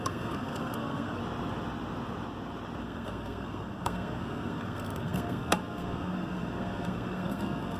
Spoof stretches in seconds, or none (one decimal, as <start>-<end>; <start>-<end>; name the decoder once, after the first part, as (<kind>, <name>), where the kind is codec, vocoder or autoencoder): 0.0-1.2 (codec, SNAC); 2.8-7.8